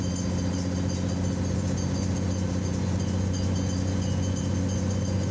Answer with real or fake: real